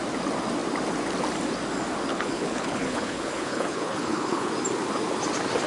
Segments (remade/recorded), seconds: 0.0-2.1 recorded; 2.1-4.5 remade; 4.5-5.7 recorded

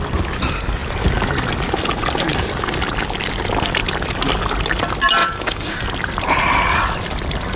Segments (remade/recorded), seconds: 0.0-5.2 recorded; 5.2-5.8 remade; 5.8-7.6 recorded

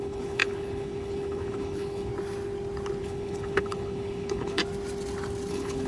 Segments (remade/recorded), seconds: 0.0-2.1 remade; 2.1-3.0 recorded; 3.0-4.6 remade; 4.6-5.5 recorded; 5.5-5.9 remade

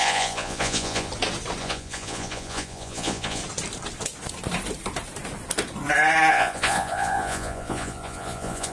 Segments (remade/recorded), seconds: 0.0-1.1 remade; 1.1-1.6 recorded; 1.6-3.4 remade; 3.4-6.3 recorded; 6.3-8.7 remade

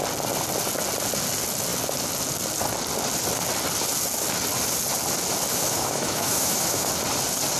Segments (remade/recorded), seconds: 0.0-5.5 recorded; 5.5-6.9 remade; 6.9-7.6 recorded

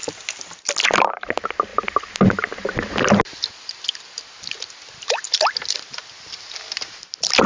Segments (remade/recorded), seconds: 0.0-7.5 recorded

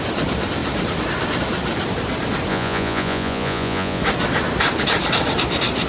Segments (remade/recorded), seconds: 0.0-2.5 recorded; 2.5-4.0 remade; 4.0-5.9 recorded

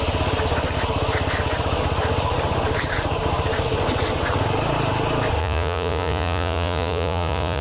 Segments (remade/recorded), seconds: 0.0-5.4 recorded; 5.4-7.6 remade